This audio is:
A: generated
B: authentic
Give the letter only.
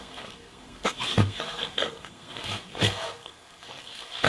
A